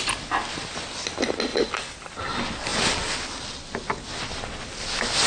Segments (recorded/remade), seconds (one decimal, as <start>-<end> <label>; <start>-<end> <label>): 0.0-1.5 recorded; 1.5-2.2 remade; 2.2-5.3 recorded